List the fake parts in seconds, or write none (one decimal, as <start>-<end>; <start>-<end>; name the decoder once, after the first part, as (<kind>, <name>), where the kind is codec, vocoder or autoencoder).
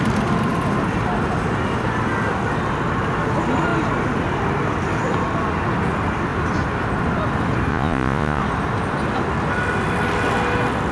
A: 7.7-8.4 (vocoder, Vocos)